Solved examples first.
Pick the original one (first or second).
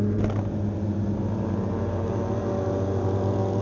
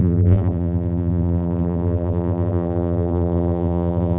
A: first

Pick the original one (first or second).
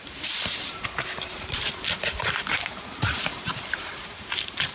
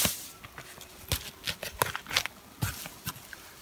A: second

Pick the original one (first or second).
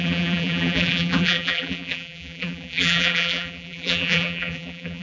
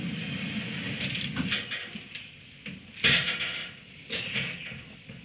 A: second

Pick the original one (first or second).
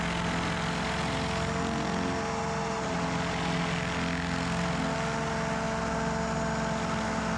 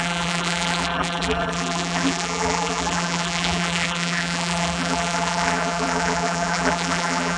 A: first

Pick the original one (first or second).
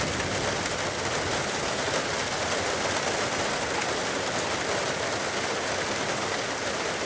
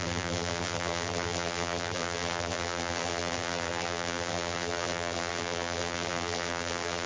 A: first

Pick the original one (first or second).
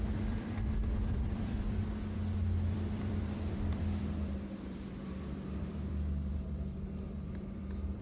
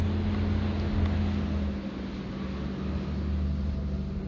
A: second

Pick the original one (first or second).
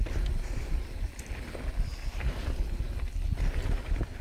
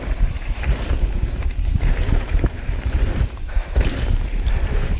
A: first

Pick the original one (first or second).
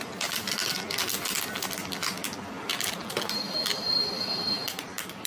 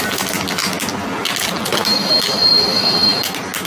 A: second